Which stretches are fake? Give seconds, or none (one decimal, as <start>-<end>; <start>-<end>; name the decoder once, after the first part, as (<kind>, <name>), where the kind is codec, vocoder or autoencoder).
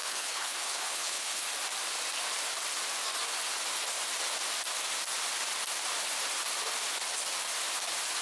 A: 0.0-1.5 (codec, HILCodec)